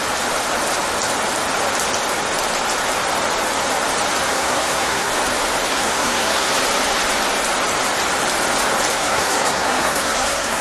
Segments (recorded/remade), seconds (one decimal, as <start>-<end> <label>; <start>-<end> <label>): 0.0-4.3 recorded; 4.3-5.1 remade; 5.1-5.7 recorded; 5.7-6.5 remade; 6.5-8.9 recorded; 8.9-10.6 remade